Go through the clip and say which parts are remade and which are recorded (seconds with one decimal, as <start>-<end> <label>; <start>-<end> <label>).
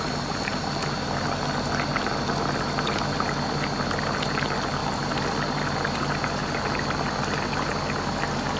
0.0-8.6 recorded